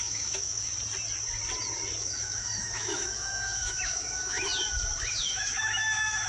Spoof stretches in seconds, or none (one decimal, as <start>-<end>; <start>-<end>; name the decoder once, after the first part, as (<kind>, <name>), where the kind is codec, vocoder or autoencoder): 0.0-0.7 (autoencoder, DAC-VAE); 2.0-4.5; 5.1-6.3